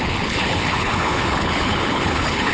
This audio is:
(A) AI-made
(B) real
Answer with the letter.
A